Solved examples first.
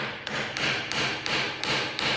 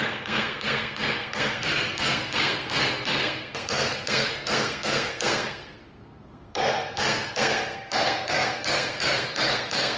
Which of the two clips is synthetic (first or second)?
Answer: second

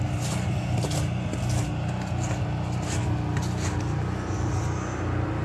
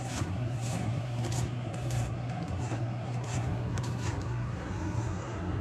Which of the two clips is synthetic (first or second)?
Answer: second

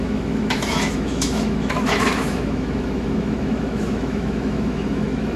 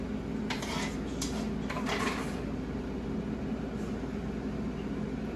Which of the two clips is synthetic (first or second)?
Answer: first